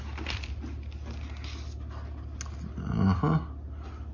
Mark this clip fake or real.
real